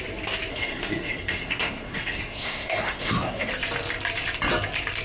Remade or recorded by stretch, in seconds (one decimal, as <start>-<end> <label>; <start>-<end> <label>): 0.0-0.5 recorded; 0.5-3.5 remade; 3.5-5.0 recorded